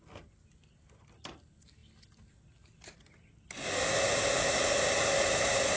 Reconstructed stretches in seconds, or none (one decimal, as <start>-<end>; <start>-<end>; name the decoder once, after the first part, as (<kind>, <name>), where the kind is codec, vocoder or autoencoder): none